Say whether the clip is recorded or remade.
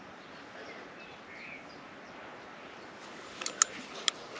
recorded